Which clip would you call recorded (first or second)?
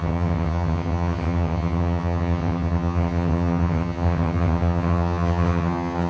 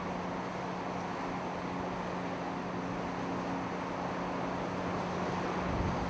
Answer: second